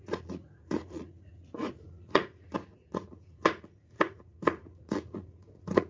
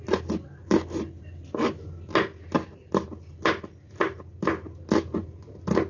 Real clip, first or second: second